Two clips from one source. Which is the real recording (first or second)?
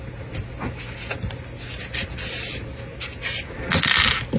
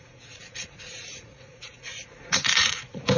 first